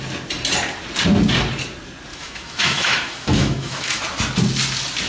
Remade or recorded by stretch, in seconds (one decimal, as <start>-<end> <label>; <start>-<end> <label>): 0.0-2.1 recorded; 2.1-4.0 remade; 4.0-5.1 recorded